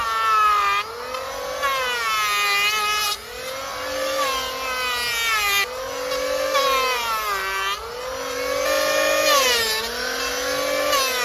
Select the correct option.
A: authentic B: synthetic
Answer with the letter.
A